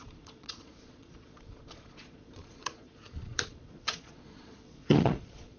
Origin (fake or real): fake